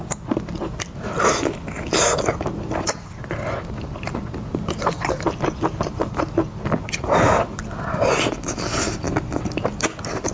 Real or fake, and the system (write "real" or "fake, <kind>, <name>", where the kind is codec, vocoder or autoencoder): real